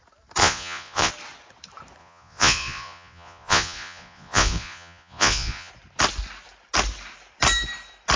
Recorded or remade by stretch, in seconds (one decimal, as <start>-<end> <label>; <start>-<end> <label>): 0.0-0.4 recorded; 0.4-1.1 remade; 1.1-2.0 recorded; 2.0-5.7 remade; 5.7-8.2 recorded